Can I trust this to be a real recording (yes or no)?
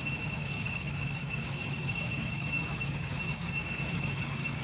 no